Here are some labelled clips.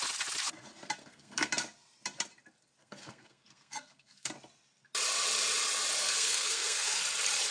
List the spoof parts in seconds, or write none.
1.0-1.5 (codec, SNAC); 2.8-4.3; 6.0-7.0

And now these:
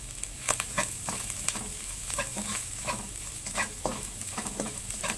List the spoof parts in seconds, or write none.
0.0-5.2 (autoencoder, DAC-VAE)

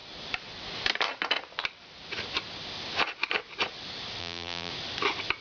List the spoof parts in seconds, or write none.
4.2-4.7 (vocoder, BigVGAN v2)

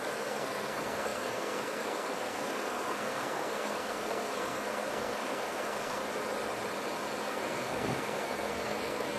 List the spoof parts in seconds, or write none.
0.0-6.0 (codec, SNAC); 7.2-9.2

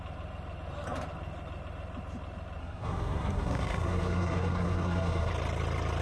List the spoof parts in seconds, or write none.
2.6-5.3 (codec, SNAC)

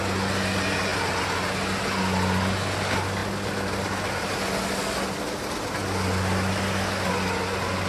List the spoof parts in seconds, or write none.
none